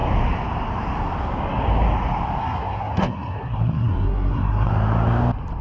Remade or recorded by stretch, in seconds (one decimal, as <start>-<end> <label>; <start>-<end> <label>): 0.0-2.4 recorded; 2.4-4.7 remade; 4.7-5.6 recorded